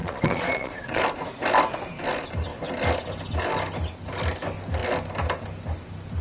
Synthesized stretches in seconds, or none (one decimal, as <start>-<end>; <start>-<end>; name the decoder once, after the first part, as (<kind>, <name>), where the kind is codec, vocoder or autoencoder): 0.0-1.0 (vocoder, Vocos)